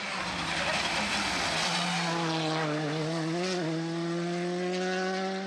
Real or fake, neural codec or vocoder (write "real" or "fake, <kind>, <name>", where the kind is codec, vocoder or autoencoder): real